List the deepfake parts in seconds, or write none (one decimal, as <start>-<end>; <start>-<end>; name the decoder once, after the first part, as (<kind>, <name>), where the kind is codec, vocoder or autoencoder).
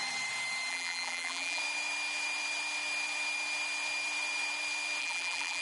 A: 0.7-1.6 (vocoder, BigVGAN v2); 5.0-5.6